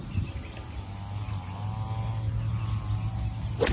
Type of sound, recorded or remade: recorded